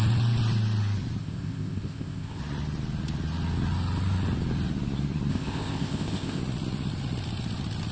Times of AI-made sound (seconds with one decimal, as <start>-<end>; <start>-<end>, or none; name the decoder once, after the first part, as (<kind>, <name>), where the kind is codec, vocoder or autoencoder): 1.2-2.4 (codec, ZipCodec); 5.3-6.4